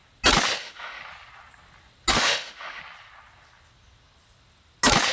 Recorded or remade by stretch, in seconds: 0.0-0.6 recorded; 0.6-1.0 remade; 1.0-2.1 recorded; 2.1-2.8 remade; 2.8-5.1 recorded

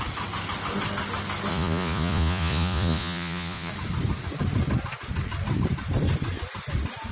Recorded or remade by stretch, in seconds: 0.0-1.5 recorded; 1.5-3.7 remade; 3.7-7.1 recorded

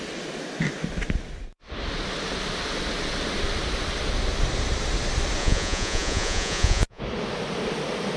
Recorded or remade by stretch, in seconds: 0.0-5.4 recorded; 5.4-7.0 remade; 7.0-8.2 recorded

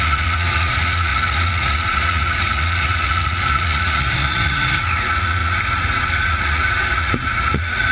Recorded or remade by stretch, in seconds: 0.0-7.9 remade